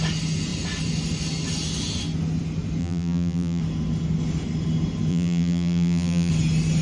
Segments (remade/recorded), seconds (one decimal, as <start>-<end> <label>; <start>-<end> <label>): 0.0-2.8 recorded; 2.8-3.6 remade; 3.6-5.1 recorded; 5.1-6.3 remade; 6.3-6.8 recorded